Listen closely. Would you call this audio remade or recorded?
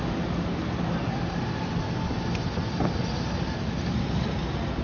recorded